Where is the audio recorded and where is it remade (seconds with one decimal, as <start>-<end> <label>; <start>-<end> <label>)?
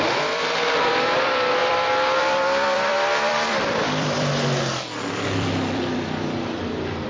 0.0-7.1 remade